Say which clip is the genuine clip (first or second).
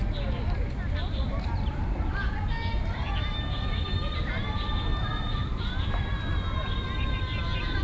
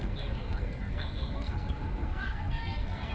first